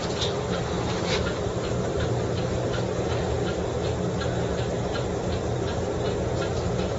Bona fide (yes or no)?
yes